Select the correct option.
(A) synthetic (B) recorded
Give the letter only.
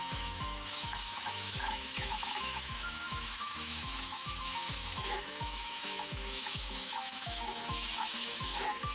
A